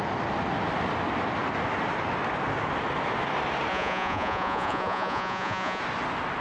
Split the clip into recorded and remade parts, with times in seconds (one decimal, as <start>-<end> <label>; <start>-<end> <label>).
0.0-3.7 recorded; 3.7-5.8 remade; 5.8-6.4 recorded